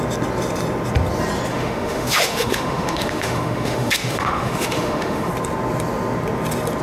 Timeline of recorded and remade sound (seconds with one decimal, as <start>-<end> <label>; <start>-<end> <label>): 0.0-1.5 recorded; 1.5-5.3 remade; 5.3-6.8 recorded